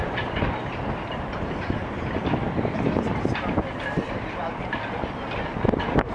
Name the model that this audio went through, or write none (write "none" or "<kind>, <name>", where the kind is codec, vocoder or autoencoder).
none